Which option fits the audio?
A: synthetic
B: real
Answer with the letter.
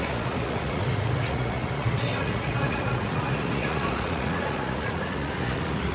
A